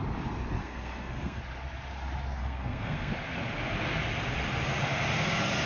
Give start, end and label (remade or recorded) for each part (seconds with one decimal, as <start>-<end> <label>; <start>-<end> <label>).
0.0-0.6 recorded; 0.6-1.4 remade; 1.4-2.4 recorded; 2.4-3.1 remade; 3.1-5.7 recorded